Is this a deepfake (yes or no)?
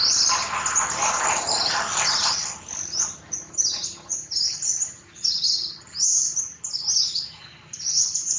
no